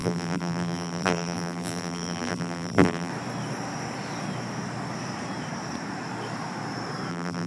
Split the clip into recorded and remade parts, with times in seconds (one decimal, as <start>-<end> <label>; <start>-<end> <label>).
0.0-3.1 remade; 3.1-7.1 recorded; 7.1-7.5 remade